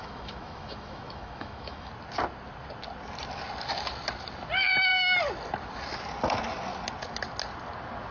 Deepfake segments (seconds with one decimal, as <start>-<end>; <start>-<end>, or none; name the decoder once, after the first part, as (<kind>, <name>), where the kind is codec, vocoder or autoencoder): 0.0-1.9 (autoencoder, DAC-VAE)